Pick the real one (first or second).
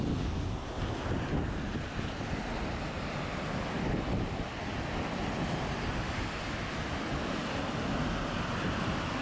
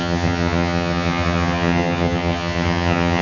first